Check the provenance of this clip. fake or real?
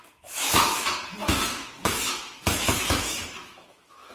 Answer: fake